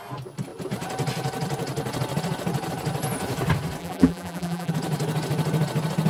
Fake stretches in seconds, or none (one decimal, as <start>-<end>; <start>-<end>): 3.8-4.7